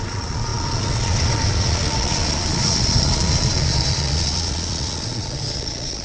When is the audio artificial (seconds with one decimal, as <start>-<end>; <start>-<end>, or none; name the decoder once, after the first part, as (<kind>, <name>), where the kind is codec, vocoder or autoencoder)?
0.0-6.0 (vocoder, Vocos)